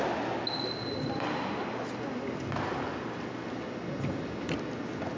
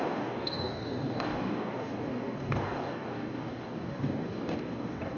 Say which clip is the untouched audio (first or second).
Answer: first